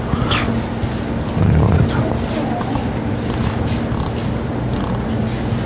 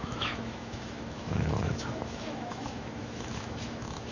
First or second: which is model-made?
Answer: second